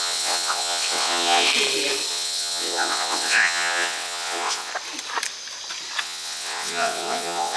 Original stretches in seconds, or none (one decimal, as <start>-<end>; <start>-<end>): 1.5-2.1; 4.7-6.0